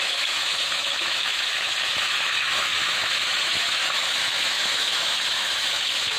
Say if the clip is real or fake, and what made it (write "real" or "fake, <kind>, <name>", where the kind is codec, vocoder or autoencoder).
fake, autoencoder, DAC-VAE